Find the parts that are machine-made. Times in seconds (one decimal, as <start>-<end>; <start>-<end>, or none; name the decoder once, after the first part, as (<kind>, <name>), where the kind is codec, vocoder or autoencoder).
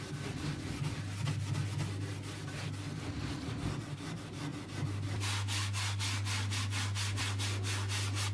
none